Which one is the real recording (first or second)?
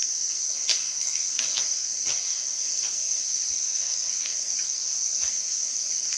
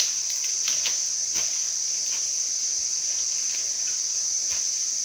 second